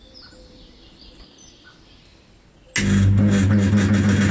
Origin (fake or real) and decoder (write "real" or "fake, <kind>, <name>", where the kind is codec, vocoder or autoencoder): real